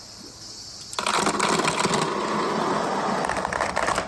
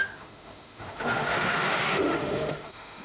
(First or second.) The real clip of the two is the first